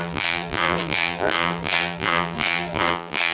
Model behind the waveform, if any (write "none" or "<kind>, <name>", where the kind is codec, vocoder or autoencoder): vocoder, BigVGAN v2